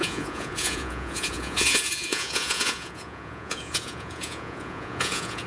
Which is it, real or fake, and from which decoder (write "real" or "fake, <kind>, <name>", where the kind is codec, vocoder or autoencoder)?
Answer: fake, vocoder, Vocos